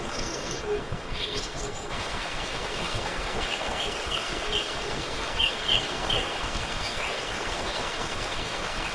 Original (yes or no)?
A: no